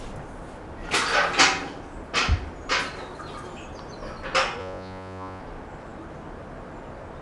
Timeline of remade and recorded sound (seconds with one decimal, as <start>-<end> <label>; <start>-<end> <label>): 0.0-4.6 recorded; 4.6-5.4 remade; 5.4-7.2 recorded